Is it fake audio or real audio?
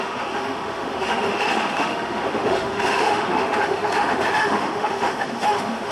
fake